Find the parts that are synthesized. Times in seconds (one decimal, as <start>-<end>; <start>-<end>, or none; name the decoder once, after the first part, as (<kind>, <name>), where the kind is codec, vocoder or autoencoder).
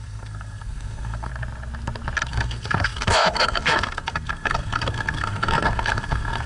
0.0-1.3 (codec, SNAC); 2.3-6.5